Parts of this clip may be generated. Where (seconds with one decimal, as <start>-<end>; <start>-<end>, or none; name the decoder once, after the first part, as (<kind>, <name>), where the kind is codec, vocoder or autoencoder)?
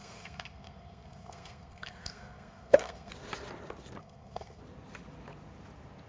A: 0.0-3.1 (codec, SNAC); 4.0-4.6